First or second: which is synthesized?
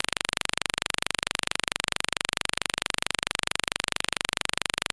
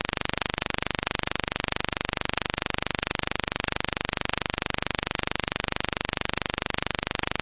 first